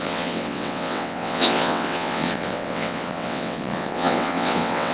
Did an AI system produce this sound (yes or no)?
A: yes